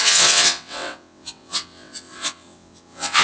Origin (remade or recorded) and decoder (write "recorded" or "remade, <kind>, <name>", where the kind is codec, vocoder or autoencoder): remade, vocoder, WaveNeXt